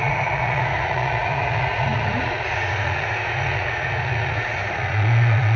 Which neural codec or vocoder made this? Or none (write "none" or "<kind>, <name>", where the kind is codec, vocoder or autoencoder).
vocoder, Vocos